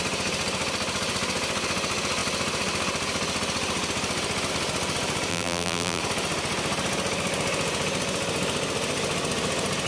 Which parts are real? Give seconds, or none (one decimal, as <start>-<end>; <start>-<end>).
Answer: 0.0-5.3; 6.0-9.9